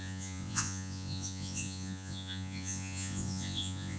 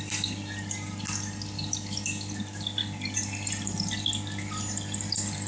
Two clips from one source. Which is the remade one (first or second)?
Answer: first